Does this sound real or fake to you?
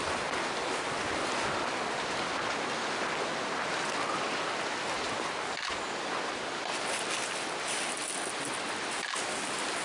real